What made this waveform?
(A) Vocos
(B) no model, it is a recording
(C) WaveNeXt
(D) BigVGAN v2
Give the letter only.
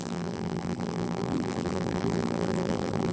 D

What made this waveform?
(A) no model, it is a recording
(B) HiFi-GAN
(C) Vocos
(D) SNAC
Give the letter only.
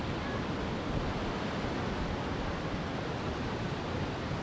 A